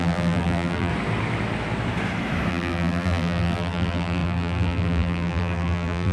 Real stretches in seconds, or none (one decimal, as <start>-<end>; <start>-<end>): 0.9-2.5